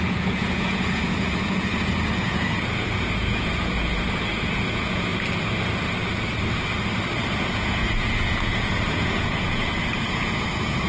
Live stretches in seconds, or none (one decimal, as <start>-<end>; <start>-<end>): 5.1-7.3